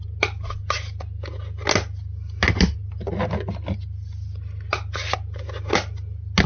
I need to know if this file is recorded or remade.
recorded